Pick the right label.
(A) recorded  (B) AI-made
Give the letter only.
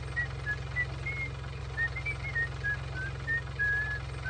A